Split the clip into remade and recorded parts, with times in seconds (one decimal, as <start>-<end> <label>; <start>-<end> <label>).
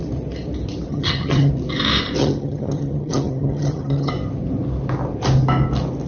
0.0-0.9 recorded; 0.9-1.5 remade; 1.5-2.2 recorded; 2.2-4.1 remade; 4.1-6.1 recorded